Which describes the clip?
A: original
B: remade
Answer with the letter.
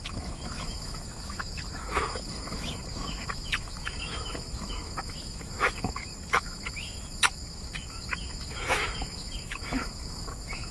B